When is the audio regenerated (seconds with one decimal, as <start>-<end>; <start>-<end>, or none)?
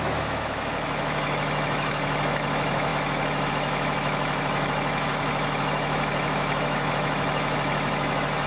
0.0-8.5